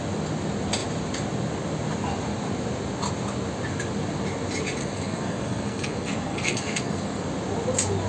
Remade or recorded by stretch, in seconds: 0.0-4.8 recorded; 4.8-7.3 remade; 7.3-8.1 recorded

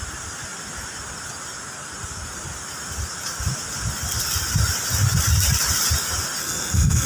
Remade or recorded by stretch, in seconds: 0.0-6.4 recorded; 6.4-7.1 remade

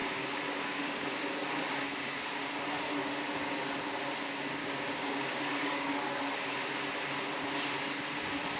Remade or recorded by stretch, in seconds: 0.0-1.3 remade; 1.3-4.6 recorded; 4.6-6.2 remade; 6.2-8.6 recorded